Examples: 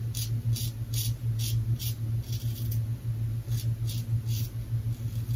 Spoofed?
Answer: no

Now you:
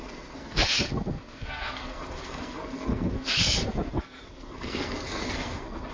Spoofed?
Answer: yes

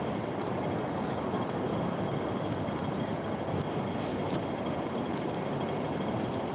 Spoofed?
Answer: no